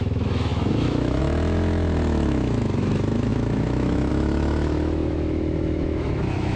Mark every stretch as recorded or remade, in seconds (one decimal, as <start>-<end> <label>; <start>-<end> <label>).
0.0-6.6 remade